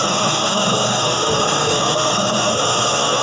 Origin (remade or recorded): remade